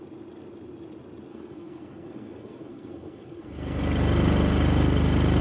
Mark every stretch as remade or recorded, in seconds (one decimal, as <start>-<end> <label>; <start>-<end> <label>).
0.0-1.3 recorded; 1.3-3.8 remade; 3.8-5.4 recorded